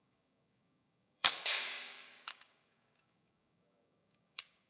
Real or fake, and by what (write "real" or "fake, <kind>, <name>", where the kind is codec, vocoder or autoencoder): fake, codec, DAC